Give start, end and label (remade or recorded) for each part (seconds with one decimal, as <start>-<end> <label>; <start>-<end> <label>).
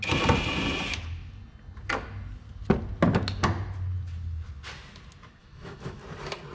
0.0-5.4 recorded; 5.4-6.0 remade; 6.0-6.5 recorded